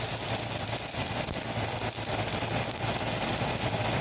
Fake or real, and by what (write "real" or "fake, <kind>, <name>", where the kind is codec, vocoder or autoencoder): real